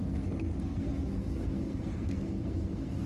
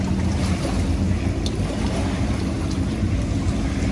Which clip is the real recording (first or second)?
second